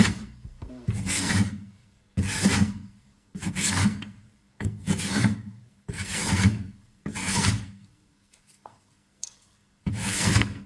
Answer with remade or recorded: remade